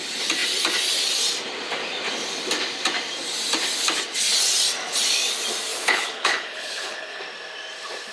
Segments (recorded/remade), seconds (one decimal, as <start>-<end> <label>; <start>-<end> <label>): 0.0-5.7 recorded; 5.7-7.2 remade; 7.2-8.1 recorded